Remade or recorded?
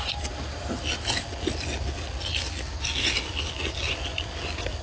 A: recorded